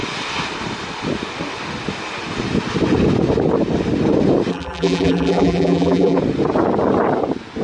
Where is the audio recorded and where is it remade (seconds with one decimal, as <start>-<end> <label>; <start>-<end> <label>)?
0.0-4.5 recorded; 4.5-6.2 remade; 6.2-7.6 recorded